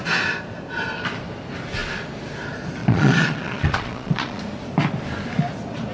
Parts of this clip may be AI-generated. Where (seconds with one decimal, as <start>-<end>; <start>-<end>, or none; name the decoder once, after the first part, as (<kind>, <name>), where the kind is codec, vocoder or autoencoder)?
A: 2.8-4.4 (vocoder, Vocos)